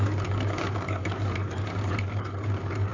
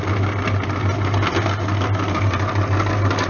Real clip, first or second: second